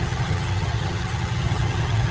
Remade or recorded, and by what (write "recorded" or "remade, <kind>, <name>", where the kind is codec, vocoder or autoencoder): remade, vocoder, HiFi-GAN